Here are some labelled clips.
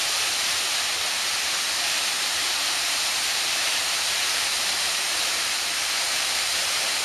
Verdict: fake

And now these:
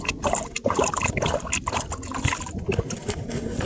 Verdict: real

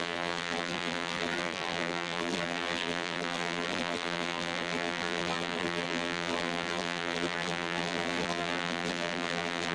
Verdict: fake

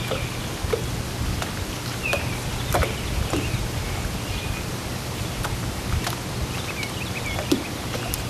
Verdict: real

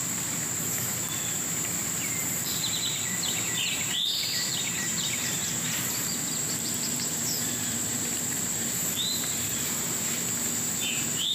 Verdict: fake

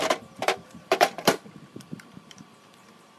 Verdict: fake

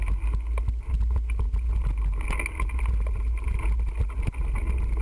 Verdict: real